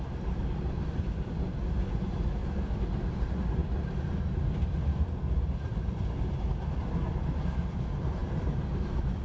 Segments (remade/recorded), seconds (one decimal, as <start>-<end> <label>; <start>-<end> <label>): 0.0-2.4 remade; 2.4-3.0 recorded; 3.0-9.2 remade